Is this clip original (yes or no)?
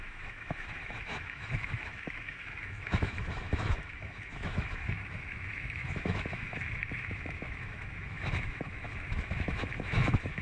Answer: no